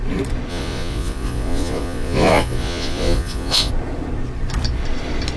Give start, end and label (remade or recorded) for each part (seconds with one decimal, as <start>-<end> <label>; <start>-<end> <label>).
0.0-0.5 recorded; 0.5-3.7 remade; 3.7-5.4 recorded